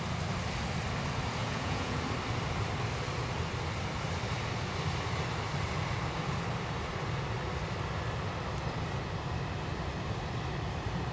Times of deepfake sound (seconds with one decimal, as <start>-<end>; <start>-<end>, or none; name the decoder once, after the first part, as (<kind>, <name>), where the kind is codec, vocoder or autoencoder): 1.4-2.0 (vocoder, Vocos)